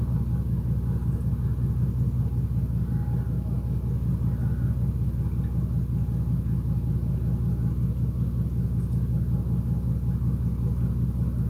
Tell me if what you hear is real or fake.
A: real